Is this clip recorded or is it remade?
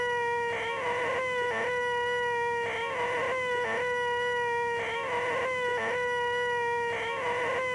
recorded